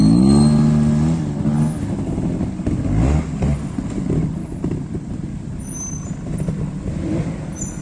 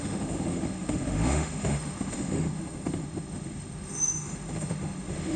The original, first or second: first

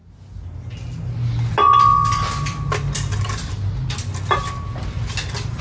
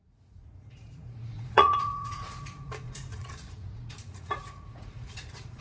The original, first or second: first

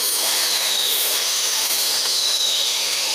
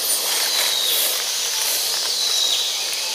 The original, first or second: second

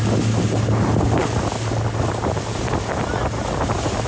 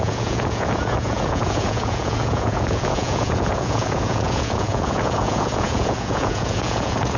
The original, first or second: first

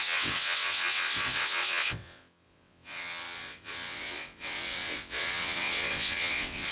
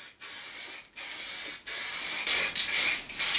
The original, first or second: second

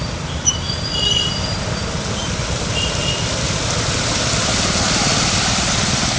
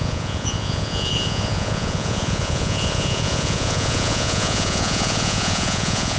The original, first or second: first